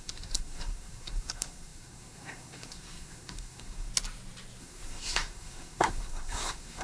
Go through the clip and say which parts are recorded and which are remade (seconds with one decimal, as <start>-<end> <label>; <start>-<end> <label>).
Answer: 0.0-3.9 remade; 3.9-4.6 recorded; 4.6-6.8 remade